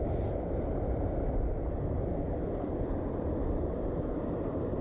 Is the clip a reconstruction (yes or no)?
no